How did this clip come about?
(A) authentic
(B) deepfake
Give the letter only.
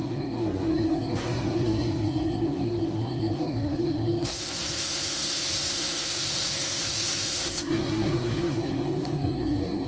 B